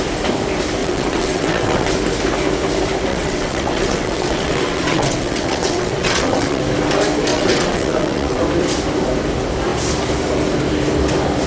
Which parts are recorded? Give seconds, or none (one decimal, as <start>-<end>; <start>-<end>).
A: 0.0-0.8; 1.9-3.1; 6.6-7.3; 8.4-11.5